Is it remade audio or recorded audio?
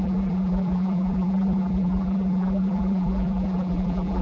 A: remade